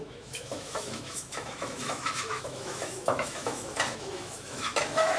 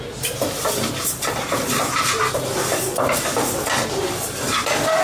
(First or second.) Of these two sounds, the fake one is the first